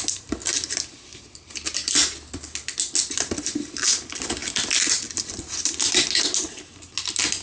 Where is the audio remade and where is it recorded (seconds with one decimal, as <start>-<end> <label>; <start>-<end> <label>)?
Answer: 0.0-7.4 recorded